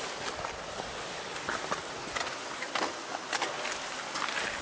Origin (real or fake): real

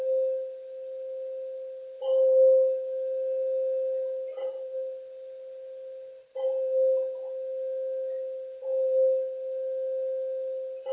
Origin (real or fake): real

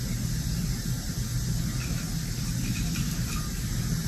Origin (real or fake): real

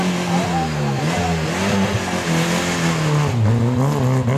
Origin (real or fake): real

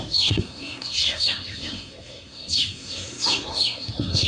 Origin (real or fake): fake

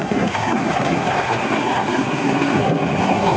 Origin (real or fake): fake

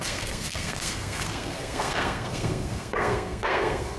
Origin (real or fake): fake